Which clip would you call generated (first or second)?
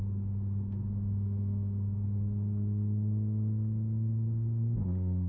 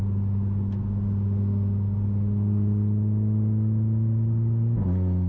first